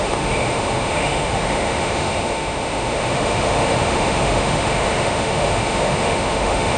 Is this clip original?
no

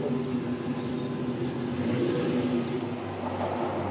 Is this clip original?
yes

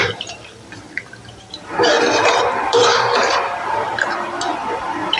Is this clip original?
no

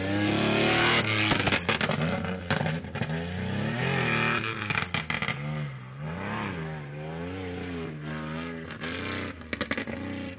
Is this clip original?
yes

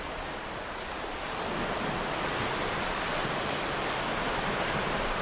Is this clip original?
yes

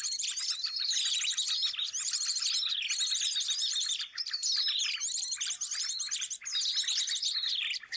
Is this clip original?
no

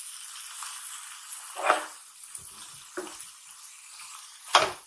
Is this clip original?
yes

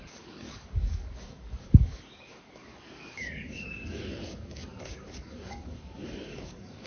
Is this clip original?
no